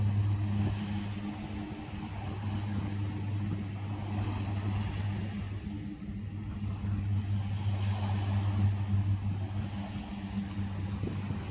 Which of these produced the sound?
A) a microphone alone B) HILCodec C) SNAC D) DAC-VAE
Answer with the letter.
A